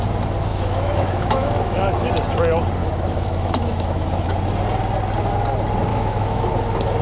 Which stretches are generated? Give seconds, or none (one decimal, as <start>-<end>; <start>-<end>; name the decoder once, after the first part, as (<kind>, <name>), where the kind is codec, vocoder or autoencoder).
0.5-2.1 (autoencoder, DAC-VAE); 2.8-4.3; 5.9-6.5